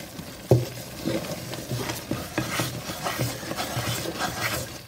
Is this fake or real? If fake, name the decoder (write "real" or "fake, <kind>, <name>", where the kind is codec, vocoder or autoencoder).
real